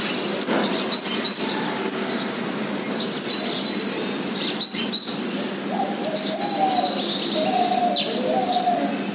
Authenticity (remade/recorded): recorded